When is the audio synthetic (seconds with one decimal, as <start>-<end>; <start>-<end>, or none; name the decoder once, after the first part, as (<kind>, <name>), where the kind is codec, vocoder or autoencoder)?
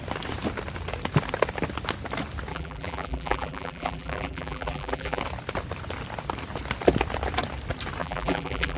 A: 2.5-5.2 (vocoder, BigVGAN v2); 8.0-8.8